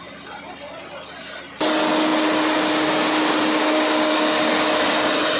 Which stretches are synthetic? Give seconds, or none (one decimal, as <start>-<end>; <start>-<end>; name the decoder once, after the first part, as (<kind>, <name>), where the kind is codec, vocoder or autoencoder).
none